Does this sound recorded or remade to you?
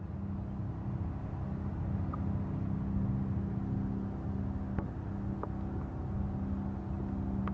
recorded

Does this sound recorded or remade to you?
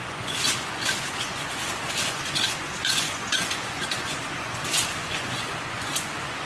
remade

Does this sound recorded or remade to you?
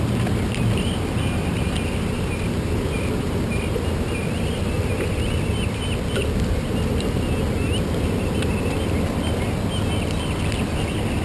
recorded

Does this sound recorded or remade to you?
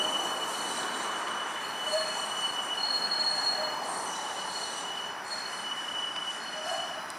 recorded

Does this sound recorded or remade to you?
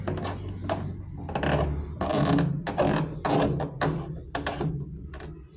recorded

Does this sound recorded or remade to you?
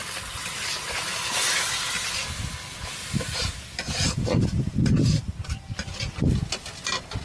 recorded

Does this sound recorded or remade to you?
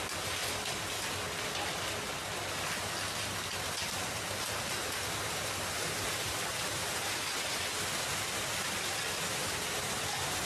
recorded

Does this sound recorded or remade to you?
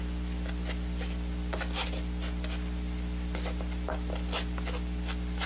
recorded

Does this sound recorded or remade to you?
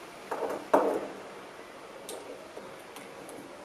recorded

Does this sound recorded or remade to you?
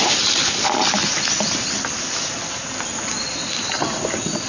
recorded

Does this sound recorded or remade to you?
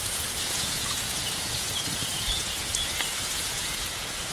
remade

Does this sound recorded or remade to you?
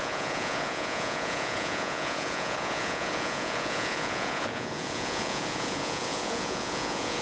remade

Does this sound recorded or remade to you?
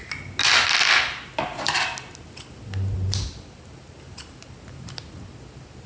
recorded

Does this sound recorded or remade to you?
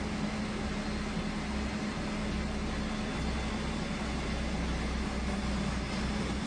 recorded